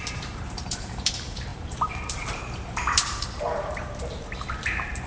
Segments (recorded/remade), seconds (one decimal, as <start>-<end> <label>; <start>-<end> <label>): 0.0-5.1 remade